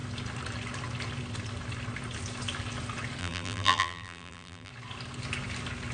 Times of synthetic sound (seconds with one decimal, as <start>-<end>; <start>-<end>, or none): 3.2-4.7